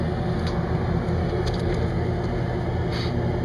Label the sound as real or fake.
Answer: real